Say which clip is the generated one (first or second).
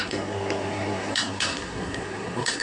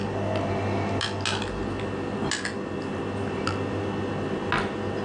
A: first